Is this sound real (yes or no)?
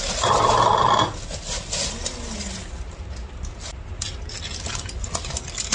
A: yes